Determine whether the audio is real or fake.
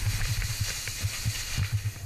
real